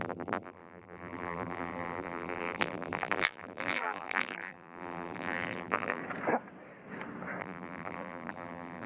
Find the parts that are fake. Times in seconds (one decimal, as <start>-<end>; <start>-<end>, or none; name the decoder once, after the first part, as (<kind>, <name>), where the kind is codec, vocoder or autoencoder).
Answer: 0.0-6.0 (vocoder, BigVGAN v2); 7.4-8.9